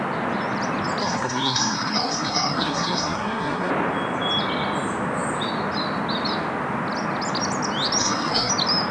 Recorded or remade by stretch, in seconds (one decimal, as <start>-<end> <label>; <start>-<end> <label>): 0.0-1.0 recorded; 1.0-3.7 remade; 3.7-8.0 recorded; 8.0-8.5 remade; 8.5-8.9 recorded